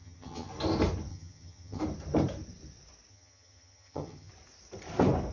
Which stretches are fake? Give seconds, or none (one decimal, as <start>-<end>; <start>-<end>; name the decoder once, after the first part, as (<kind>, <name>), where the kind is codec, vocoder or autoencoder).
0.0-0.5 (vocoder, HiFi-GAN); 1.1-1.8; 3.1-4.3